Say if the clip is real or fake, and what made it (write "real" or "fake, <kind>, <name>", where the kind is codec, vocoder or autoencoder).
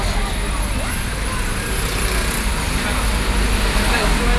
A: real